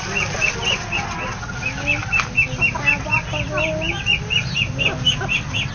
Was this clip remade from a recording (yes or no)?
no